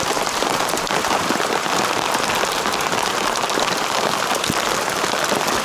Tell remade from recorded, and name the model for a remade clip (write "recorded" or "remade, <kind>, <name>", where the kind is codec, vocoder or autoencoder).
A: remade, vocoder, BigVGAN v2